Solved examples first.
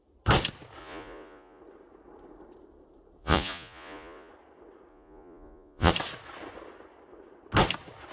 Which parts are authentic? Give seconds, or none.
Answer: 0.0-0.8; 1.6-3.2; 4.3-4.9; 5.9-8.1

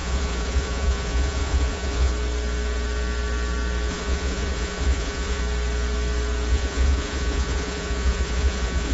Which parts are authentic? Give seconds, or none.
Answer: 2.1-3.9; 5.4-6.5

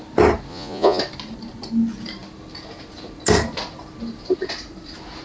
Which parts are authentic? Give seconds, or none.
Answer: 0.0-0.5; 1.0-5.2

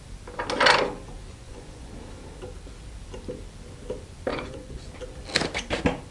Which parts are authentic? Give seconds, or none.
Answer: 0.0-1.3; 1.9-4.3; 4.8-6.1

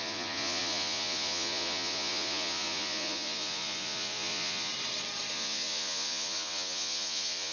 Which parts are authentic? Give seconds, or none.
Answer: 4.7-5.3

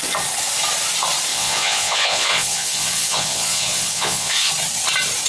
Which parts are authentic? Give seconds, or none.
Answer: 0.0-1.3; 4.5-5.3

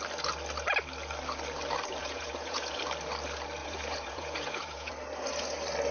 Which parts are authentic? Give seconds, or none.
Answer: 0.0-2.0; 2.8-3.6; 4.9-5.9

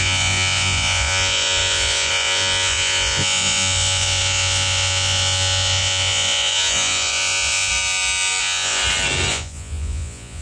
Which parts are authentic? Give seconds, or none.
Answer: 7.7-8.4; 8.8-9.3